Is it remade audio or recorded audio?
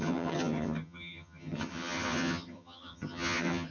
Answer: remade